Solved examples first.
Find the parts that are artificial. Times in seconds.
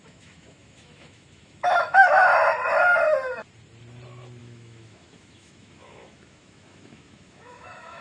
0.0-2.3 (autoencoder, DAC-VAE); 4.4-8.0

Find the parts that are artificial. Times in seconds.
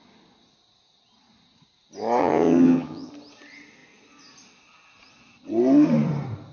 2.2-3.1 (vocoder, HiFi-GAN)